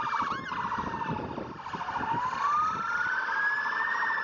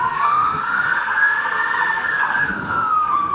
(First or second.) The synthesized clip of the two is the second